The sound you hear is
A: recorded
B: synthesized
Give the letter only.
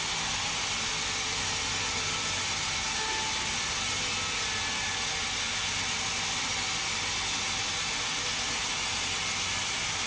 A